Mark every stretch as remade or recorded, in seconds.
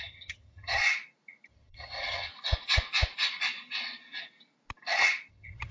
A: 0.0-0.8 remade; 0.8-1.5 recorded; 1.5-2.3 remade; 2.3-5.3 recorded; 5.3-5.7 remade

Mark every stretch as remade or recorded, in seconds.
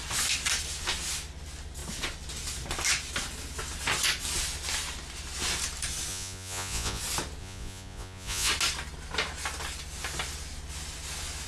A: 0.0-6.1 recorded; 6.1-7.0 remade; 7.0-7.4 recorded; 7.4-8.5 remade; 8.5-11.5 recorded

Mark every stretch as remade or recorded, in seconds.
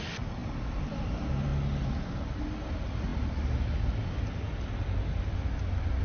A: 0.0-6.0 recorded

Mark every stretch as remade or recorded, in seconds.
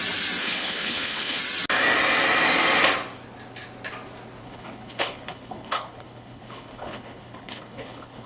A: 0.0-0.4 recorded; 0.4-1.4 remade; 1.4-4.4 recorded; 4.4-8.3 remade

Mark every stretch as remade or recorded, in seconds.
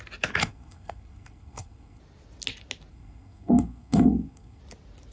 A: 0.0-0.4 recorded; 0.4-2.0 remade; 2.0-2.9 recorded; 2.9-4.6 remade; 4.6-5.1 recorded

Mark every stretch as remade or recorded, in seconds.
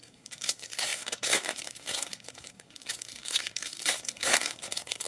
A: 0.0-5.1 remade